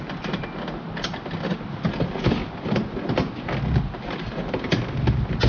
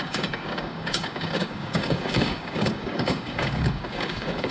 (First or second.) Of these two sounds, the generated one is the second